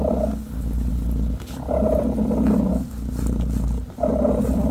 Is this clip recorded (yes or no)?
yes